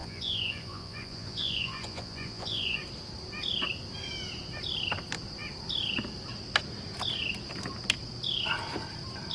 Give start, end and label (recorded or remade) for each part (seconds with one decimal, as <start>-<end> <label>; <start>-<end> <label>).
0.0-2.8 remade; 2.8-9.3 recorded